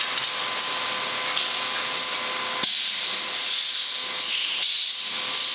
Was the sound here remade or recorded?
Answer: recorded